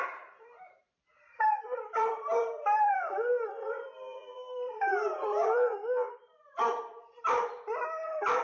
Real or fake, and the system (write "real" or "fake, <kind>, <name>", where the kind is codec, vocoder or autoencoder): fake, vocoder, BigVGAN v2